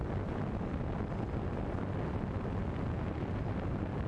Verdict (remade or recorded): recorded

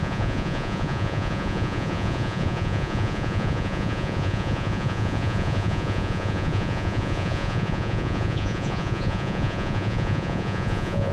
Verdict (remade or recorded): remade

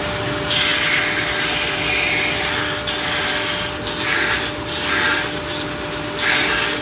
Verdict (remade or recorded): recorded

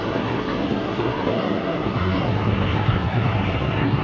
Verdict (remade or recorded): remade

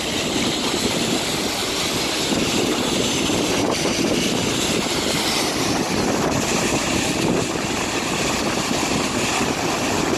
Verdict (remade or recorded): recorded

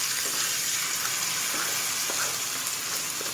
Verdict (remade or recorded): recorded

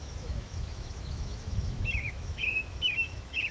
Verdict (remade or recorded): remade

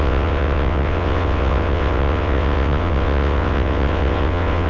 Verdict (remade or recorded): remade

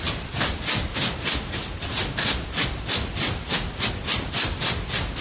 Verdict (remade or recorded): remade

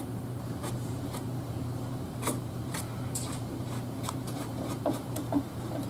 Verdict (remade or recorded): remade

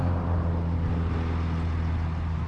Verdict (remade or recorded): recorded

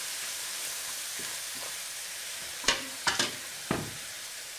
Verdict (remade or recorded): remade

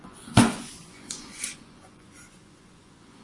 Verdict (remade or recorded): remade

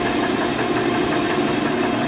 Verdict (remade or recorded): recorded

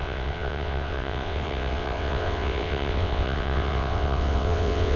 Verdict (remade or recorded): remade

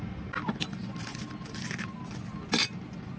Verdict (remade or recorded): recorded